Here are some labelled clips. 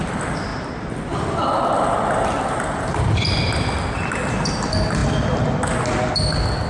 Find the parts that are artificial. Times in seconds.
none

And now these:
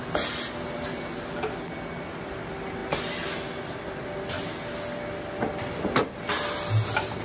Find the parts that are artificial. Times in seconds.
none

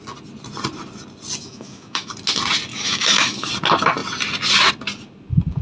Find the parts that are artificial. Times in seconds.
1.4-2.1 (autoencoder, DAC-VAE); 2.7-3.5

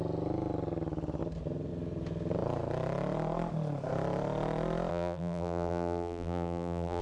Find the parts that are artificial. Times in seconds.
4.9-7.0 (vocoder, BigVGAN v2)

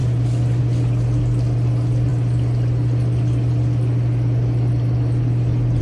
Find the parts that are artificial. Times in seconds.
none